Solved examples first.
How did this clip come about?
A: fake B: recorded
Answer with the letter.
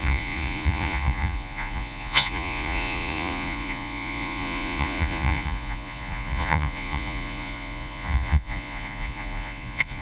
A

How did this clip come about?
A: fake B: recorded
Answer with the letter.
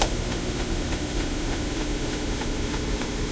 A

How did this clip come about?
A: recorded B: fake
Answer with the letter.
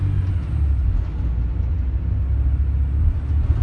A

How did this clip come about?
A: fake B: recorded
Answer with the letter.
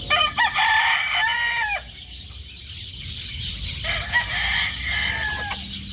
B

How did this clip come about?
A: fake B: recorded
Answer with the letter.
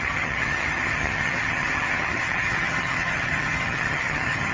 A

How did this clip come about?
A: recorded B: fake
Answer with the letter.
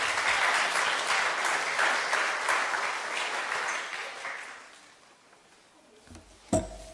A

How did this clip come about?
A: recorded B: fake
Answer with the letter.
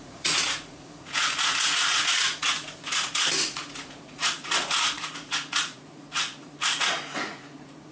B